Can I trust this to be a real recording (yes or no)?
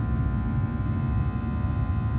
yes